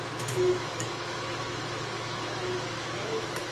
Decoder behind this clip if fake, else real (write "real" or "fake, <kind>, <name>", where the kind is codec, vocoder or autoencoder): fake, autoencoder, DAC-VAE